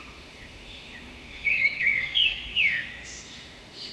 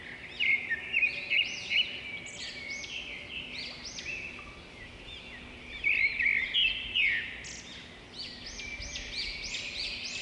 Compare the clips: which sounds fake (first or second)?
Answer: first